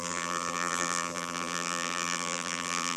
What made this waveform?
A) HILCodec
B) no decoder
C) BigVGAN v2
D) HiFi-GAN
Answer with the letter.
C